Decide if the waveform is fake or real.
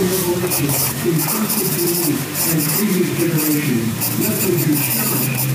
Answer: fake